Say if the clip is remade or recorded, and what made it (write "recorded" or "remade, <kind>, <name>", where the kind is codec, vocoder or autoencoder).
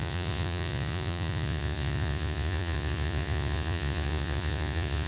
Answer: remade, vocoder, Vocos